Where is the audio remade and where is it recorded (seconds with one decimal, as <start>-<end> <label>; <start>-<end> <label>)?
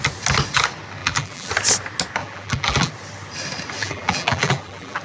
0.0-1.0 recorded; 1.0-1.5 remade; 1.5-2.2 recorded; 2.2-2.9 remade; 2.9-3.8 recorded; 3.8-5.0 remade